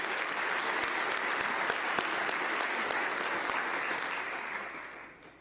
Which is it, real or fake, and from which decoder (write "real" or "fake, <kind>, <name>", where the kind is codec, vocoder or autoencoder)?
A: real